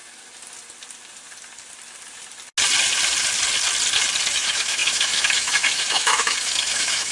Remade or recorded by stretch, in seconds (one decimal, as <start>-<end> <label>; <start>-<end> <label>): 0.0-4.3 recorded; 4.3-7.1 remade